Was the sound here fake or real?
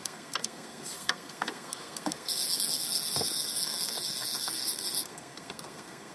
fake